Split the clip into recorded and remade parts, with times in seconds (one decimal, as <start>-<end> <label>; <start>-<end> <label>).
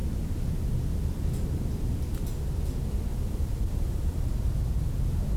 0.0-3.1 recorded; 3.1-4.2 remade; 4.2-5.4 recorded